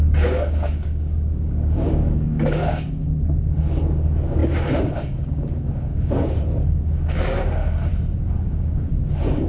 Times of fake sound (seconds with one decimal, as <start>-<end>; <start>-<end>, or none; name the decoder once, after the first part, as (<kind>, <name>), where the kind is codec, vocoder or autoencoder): 0.0-7.9 (codec, DAC); 8.5-9.5